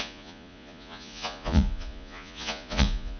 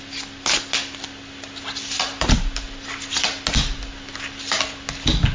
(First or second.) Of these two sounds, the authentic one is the second